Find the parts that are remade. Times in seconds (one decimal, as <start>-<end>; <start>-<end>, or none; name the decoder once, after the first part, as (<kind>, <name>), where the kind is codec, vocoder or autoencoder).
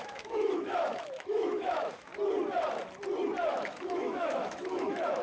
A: 0.0-2.1 (autoencoder, DAC-VAE); 3.5-5.2